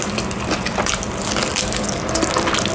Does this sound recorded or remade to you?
recorded